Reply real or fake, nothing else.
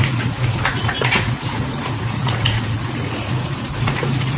fake